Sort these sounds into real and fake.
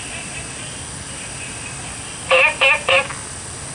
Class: real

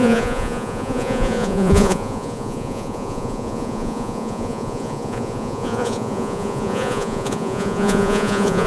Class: fake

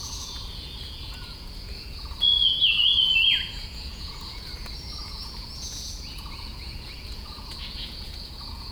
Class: fake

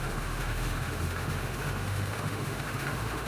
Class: fake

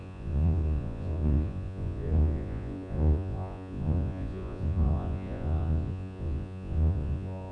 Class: fake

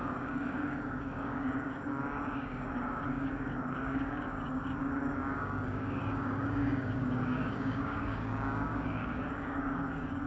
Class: fake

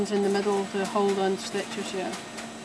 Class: real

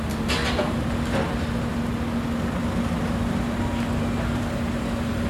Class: real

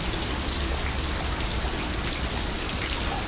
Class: real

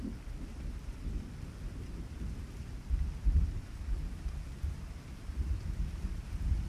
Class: real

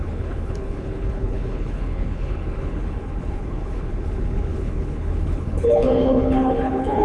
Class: fake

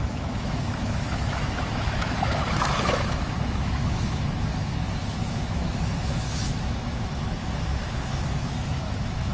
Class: fake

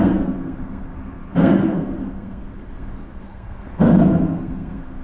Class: fake